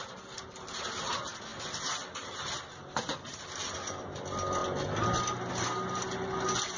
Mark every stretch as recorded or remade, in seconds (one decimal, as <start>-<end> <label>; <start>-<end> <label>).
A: 0.0-6.8 recorded